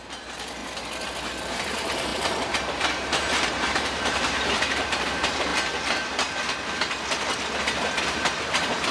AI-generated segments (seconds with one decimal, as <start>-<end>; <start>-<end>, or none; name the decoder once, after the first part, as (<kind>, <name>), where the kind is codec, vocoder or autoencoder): 0.0-0.6 (vocoder, BigVGAN v2); 1.5-5.5; 8.0-8.9